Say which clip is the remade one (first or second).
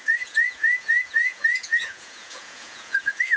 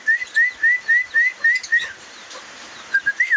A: first